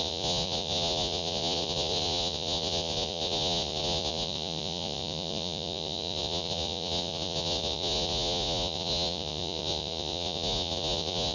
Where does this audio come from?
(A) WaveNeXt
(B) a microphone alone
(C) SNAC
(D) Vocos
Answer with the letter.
D